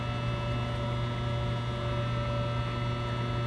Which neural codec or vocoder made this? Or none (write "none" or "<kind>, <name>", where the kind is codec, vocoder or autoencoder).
none